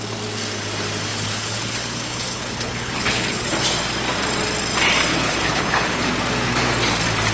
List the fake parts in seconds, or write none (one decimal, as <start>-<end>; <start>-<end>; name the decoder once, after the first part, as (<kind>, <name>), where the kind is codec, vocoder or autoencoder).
1.1-3.5 (codec, HILCodec); 5.1-6.1